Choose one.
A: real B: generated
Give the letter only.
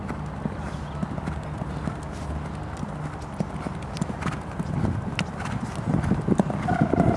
A